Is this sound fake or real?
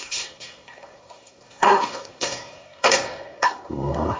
fake